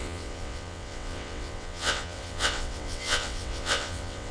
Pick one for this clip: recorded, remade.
remade